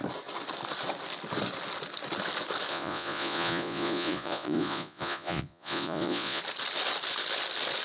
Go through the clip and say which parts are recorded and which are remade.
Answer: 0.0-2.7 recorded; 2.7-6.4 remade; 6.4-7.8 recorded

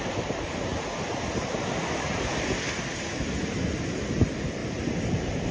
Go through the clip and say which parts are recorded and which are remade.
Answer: 0.0-0.7 remade; 0.7-4.0 recorded; 4.0-4.6 remade; 4.6-5.1 recorded; 5.1-5.5 remade

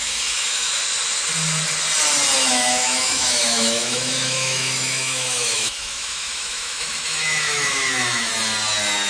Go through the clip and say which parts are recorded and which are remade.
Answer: 0.0-0.8 remade; 0.8-2.5 recorded; 2.5-8.3 remade; 8.3-9.1 recorded

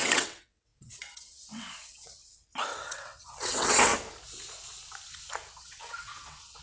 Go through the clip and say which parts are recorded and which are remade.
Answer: 0.0-2.2 remade; 2.2-2.7 recorded; 2.7-3.9 remade; 3.9-5.6 recorded; 5.6-6.6 remade